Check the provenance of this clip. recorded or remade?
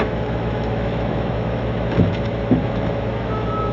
remade